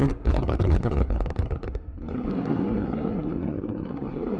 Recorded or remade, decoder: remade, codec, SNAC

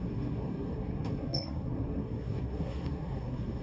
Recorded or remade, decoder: remade, codec, SNAC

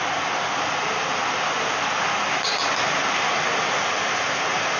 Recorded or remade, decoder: recorded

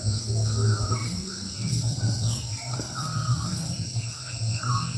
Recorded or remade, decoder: remade, codec, SNAC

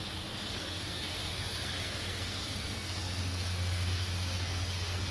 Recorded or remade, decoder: remade, codec, SNAC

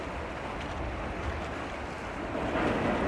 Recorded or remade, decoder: recorded